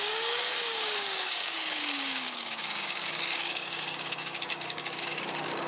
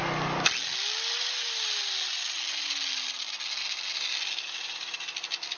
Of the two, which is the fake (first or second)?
first